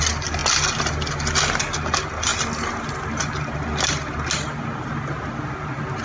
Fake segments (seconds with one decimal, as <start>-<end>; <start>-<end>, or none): none